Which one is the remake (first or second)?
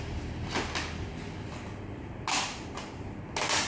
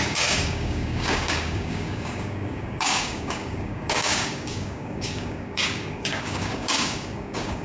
second